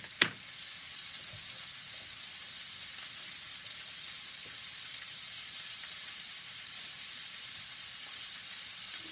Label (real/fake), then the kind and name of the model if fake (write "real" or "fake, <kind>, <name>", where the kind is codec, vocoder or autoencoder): real